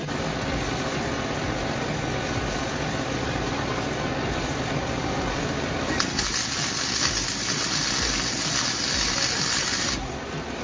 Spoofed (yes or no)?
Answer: no